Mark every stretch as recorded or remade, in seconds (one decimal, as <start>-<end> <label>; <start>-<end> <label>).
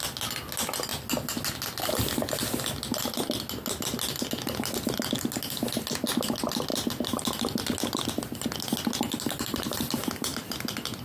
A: 0.0-11.0 recorded